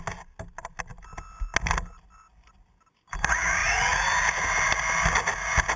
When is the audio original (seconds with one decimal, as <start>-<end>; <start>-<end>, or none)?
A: 0.0-5.8